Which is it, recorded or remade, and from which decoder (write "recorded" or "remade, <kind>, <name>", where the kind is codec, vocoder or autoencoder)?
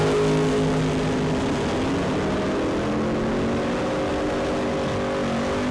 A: recorded